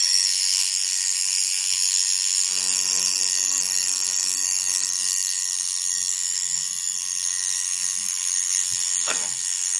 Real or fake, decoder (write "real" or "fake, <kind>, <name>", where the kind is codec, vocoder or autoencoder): fake, codec, SNAC